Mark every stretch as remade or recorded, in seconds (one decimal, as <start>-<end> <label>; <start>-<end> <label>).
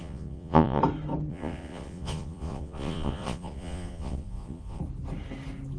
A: 0.0-0.8 remade; 0.8-1.3 recorded; 1.3-4.8 remade; 4.8-5.8 recorded